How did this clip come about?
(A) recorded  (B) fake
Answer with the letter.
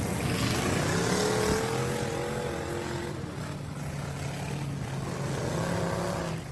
A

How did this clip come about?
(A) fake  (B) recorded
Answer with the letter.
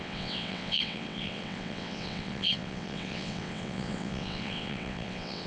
A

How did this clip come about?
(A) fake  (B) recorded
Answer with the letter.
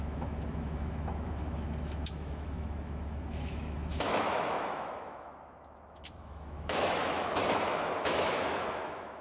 A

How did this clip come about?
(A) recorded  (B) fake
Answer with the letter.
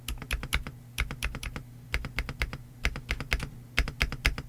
A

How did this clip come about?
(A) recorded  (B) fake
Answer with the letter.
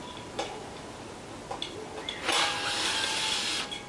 A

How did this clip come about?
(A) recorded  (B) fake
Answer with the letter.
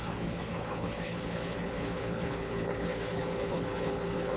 B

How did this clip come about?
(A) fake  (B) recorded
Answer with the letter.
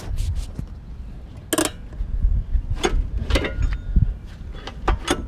B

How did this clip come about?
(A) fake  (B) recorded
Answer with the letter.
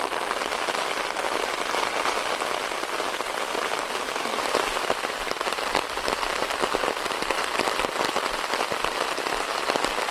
B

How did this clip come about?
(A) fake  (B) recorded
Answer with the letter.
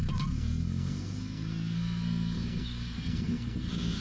A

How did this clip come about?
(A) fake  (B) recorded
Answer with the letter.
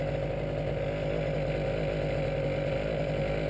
B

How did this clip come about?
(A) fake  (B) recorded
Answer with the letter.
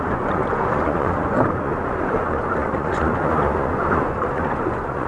A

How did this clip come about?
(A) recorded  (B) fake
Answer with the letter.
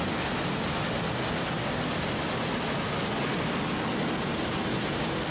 A